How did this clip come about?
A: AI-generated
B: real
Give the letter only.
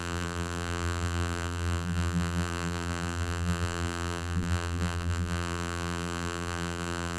A